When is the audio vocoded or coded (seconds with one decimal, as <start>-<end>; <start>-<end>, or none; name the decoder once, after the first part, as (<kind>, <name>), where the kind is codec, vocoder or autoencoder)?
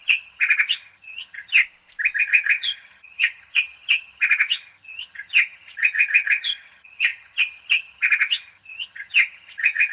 0.0-1.6 (vocoder, HiFi-GAN); 2.2-9.9